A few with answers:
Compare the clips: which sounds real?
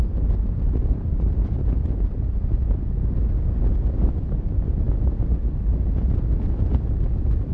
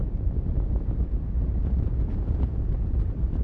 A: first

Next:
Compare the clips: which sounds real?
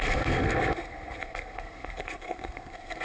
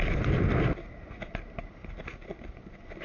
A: second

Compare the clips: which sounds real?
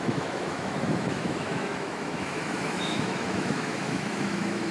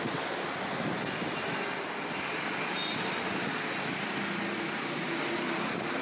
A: second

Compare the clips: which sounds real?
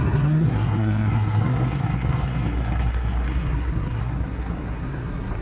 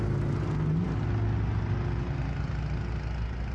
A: second